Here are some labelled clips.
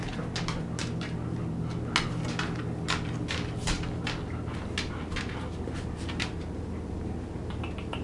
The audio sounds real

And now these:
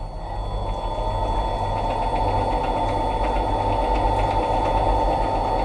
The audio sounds real